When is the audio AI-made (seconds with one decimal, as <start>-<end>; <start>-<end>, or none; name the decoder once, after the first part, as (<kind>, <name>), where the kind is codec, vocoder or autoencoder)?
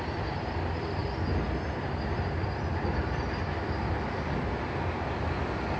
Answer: none